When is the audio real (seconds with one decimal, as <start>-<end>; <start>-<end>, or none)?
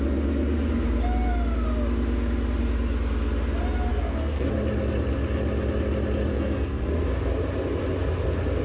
0.0-3.9; 4.5-6.3; 6.9-8.6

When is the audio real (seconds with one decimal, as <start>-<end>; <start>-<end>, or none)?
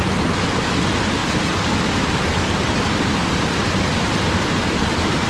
0.0-5.3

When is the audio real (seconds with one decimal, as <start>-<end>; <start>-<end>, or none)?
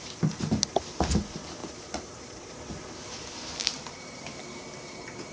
0.0-0.7; 1.2-1.6; 2.9-3.6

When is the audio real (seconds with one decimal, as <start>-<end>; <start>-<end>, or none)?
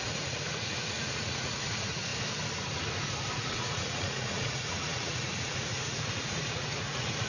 2.1-3.3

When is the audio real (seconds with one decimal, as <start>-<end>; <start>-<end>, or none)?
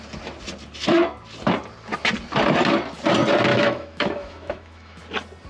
0.0-3.5; 5.0-5.5